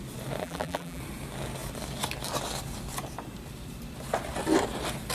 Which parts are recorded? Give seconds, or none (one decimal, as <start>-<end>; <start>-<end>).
0.0-0.4; 1.0-5.1